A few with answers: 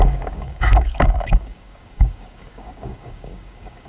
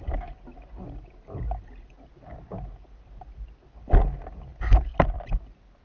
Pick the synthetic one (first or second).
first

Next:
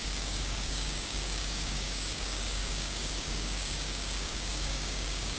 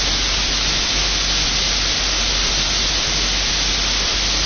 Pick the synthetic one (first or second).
first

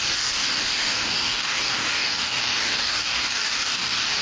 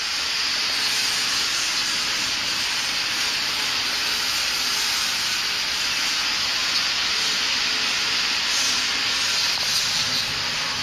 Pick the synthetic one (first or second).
first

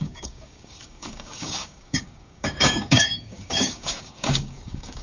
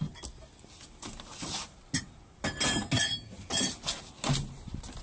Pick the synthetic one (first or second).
first